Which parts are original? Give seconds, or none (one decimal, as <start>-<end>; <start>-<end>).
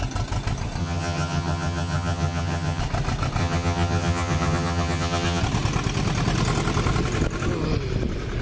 0.0-0.8; 2.8-3.4; 5.4-8.4